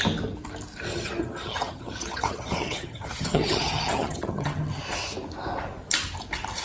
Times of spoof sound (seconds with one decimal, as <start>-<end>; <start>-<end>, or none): 0.9-4.8

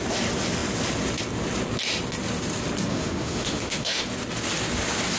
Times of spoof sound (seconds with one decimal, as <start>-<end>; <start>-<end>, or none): 2.9-4.0

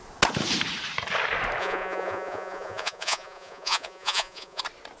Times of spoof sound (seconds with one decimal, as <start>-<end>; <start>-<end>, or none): 1.6-4.6

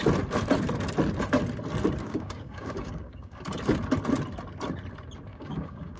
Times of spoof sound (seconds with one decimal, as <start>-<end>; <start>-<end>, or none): 2.0-3.4; 5.3-6.0